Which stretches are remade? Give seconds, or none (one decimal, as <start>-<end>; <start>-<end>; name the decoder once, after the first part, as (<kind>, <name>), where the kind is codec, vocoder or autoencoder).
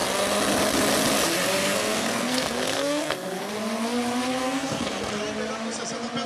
1.5-3.5 (codec, SNAC); 4.4-5.1